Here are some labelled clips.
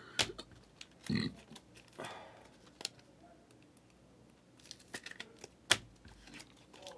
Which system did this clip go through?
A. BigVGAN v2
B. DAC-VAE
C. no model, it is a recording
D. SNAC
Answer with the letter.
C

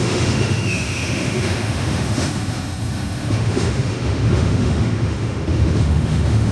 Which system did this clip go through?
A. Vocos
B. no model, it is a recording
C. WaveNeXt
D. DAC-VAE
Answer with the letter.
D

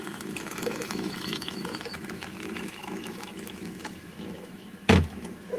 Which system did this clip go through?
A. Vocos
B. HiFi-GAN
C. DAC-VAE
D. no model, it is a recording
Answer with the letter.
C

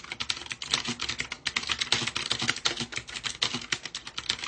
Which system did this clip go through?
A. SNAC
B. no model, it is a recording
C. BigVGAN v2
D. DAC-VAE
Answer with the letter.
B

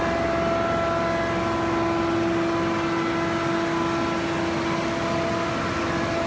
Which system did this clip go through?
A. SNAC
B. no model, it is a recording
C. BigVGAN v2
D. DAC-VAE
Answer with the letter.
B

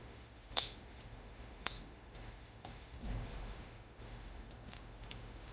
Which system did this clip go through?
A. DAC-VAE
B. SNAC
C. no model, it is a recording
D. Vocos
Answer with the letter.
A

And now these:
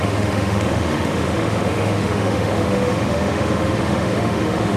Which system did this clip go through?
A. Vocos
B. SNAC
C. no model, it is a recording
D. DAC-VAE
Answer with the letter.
D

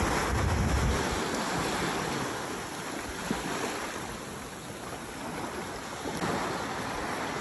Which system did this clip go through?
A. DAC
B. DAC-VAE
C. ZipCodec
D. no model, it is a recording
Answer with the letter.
D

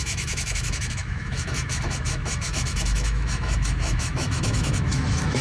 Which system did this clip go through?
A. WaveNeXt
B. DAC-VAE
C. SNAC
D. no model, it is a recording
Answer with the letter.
B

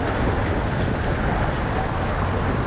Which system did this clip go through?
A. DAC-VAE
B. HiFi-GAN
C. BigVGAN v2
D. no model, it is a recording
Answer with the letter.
D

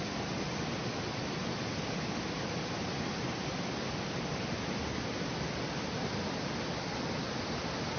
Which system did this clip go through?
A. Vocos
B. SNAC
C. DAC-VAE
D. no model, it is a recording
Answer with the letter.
D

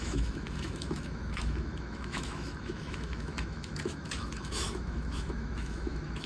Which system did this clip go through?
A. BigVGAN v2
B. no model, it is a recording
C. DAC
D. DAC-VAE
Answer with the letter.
D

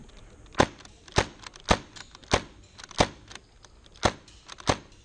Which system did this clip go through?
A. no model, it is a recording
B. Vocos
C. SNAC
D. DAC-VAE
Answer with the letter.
A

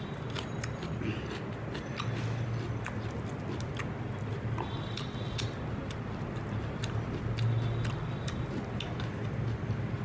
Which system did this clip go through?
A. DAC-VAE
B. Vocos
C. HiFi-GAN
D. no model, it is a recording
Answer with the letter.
D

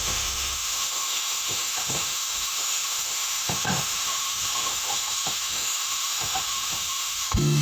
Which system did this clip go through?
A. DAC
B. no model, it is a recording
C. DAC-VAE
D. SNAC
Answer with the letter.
C